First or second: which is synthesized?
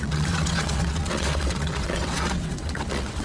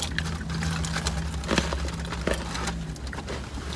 first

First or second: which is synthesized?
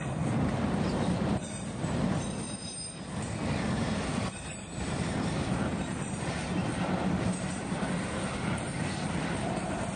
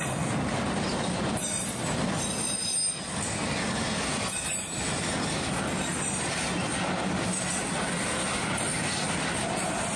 first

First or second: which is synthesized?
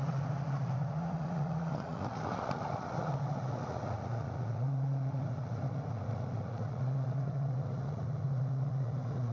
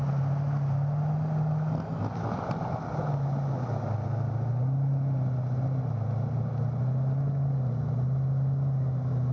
first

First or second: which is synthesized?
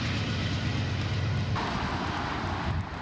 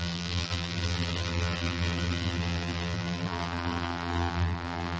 second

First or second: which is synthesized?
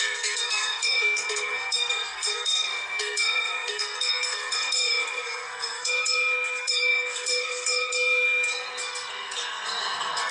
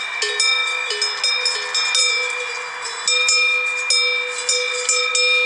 first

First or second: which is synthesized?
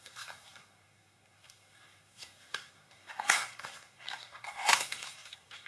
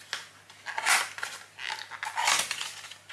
first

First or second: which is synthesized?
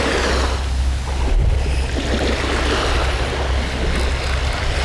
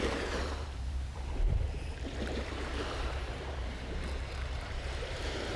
second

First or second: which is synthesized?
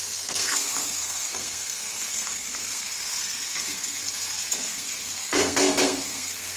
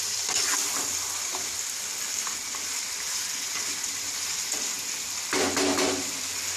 first